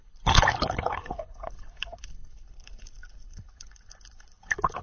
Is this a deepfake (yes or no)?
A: yes